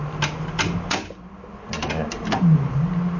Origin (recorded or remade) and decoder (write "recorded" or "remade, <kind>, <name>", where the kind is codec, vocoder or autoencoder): recorded